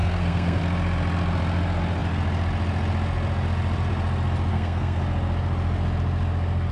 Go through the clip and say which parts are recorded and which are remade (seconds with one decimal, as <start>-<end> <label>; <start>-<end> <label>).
0.0-0.6 remade; 0.6-4.5 recorded; 4.5-5.0 remade; 5.0-6.7 recorded